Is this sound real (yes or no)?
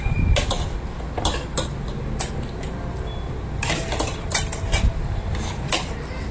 yes